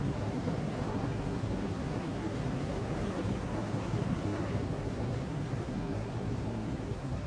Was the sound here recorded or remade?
remade